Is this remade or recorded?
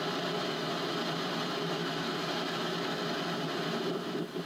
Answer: recorded